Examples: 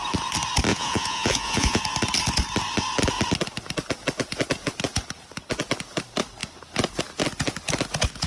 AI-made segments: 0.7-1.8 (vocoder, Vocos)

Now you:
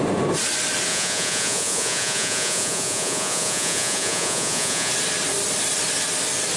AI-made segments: 0.9-4.9 (vocoder, Vocos)